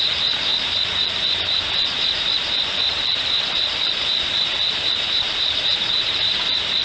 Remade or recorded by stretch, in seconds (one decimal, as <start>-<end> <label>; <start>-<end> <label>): 0.0-6.8 remade